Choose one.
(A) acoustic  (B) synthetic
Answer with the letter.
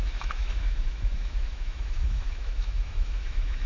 B